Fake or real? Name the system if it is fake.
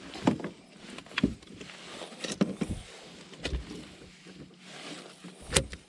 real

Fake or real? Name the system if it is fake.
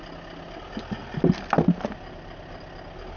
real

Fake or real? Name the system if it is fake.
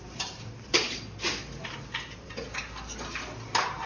real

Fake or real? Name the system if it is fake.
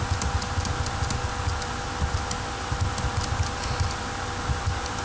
real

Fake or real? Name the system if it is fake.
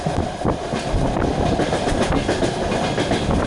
real